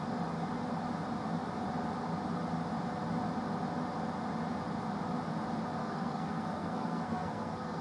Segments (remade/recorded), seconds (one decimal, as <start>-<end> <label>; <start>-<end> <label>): 0.0-5.8 recorded; 5.8-7.8 remade